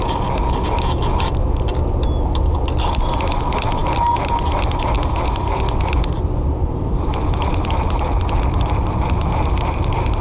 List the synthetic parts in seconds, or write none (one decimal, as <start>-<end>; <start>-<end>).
none